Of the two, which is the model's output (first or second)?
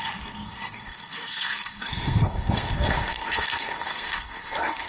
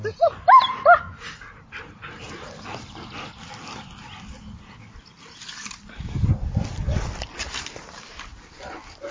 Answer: first